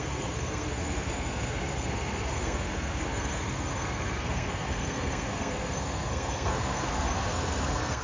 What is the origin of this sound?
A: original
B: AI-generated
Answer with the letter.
B